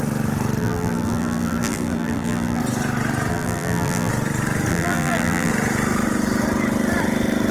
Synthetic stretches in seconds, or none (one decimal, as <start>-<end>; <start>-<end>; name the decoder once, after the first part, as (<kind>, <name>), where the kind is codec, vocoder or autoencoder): 0.6-2.6 (vocoder, BigVGAN v2); 3.3-4.1; 4.7-5.5